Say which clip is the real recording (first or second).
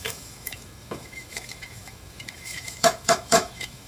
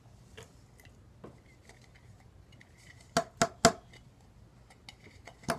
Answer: second